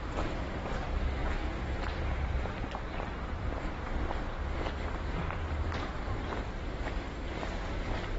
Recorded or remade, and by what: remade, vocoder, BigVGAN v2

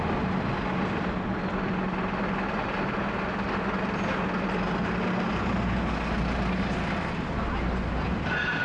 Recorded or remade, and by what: recorded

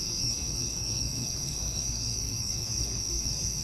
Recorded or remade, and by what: remade, codec, SNAC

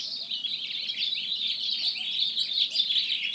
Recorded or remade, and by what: recorded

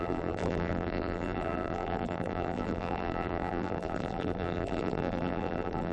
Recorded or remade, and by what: remade, vocoder, BigVGAN v2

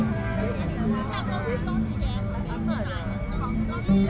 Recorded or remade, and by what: recorded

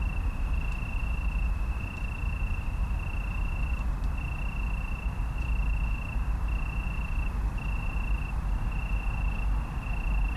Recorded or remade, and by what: recorded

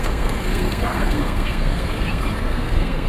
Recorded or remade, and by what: remade, codec, SNAC